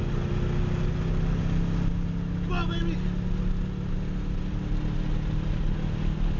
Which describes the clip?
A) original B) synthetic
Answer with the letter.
A